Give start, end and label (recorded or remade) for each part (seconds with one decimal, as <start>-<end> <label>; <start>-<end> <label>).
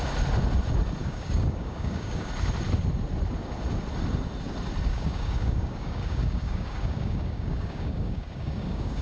0.0-1.0 recorded; 1.0-2.3 remade; 2.3-4.9 recorded; 4.9-9.0 remade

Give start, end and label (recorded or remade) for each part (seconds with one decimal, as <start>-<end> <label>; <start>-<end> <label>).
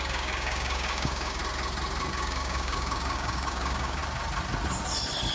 0.0-1.4 remade; 1.4-2.1 recorded; 2.1-4.0 remade; 4.0-5.3 recorded